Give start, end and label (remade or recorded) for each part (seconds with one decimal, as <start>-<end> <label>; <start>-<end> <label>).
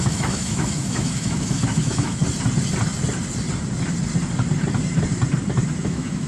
0.0-2.2 remade; 2.2-5.8 recorded; 5.8-6.3 remade